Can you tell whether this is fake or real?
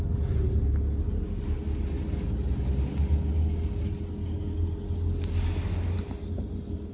real